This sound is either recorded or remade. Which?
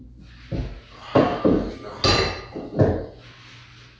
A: recorded